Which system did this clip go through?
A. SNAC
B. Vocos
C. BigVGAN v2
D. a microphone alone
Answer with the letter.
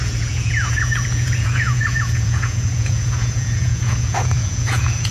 B